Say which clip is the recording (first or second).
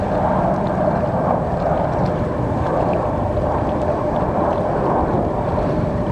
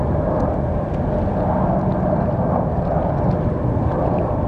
second